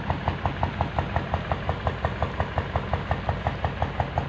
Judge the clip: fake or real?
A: real